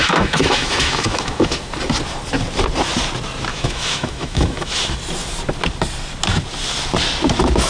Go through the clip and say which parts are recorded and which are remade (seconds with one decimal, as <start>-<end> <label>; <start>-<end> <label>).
0.0-1.6 remade; 1.6-3.5 recorded; 3.5-4.7 remade; 4.7-7.7 recorded